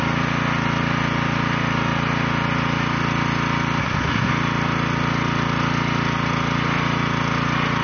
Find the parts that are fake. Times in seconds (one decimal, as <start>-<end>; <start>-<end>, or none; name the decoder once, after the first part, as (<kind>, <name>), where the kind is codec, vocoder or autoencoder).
3.8-4.3 (codec, SNAC)